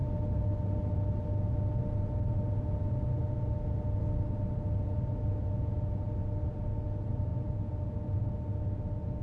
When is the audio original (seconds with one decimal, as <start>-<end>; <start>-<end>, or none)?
0.0-9.2